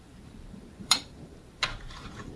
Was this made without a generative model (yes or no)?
no